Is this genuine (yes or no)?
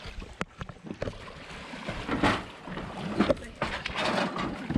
yes